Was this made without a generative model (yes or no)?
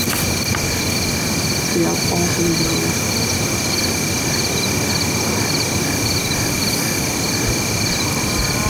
yes